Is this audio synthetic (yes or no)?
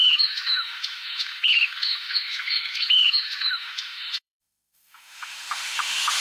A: yes